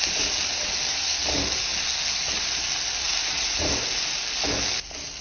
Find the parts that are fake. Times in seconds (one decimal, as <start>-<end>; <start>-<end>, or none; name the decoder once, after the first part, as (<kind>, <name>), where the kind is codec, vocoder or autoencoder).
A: 3.2-3.7 (vocoder, Vocos)